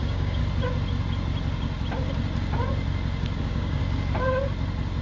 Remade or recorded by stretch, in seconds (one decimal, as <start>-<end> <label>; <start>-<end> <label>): 0.0-0.4 remade; 0.4-3.4 recorded; 3.4-3.8 remade; 3.8-5.0 recorded